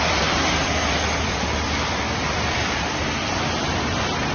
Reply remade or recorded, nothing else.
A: remade